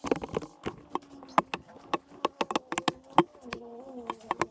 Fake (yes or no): no